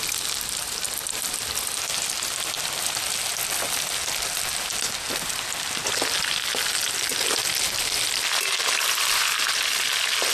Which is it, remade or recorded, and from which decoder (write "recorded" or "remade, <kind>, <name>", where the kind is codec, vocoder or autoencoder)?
recorded